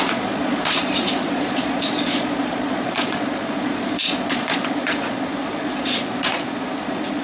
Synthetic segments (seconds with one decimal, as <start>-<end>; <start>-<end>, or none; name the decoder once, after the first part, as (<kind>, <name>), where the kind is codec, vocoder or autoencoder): 0.0-7.2 (vocoder, Vocos)